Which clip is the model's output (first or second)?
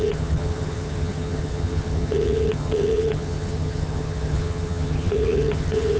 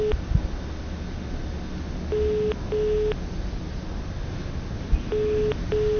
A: first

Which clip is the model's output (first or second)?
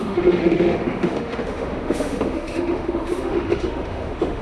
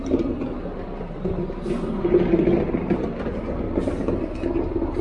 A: first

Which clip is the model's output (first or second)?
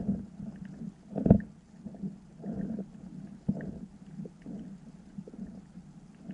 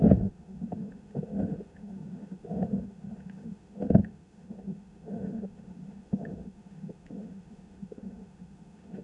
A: second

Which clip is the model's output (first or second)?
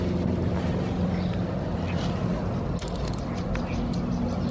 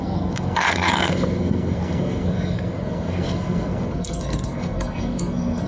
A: second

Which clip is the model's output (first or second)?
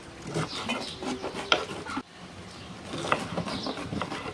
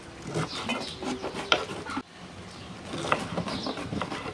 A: first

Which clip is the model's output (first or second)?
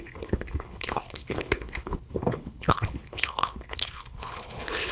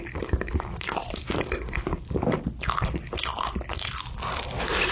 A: first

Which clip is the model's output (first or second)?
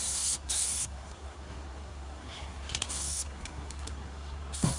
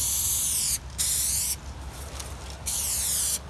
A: first